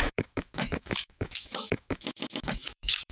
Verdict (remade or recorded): remade